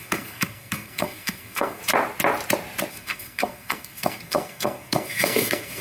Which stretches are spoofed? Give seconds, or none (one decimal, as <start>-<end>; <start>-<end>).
0.0-1.8; 2.9-5.8